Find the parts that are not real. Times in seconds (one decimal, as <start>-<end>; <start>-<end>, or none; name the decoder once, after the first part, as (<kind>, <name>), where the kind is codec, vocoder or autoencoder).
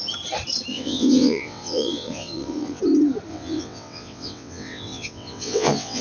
0.7-2.8 (vocoder, WaveNeXt); 3.3-6.0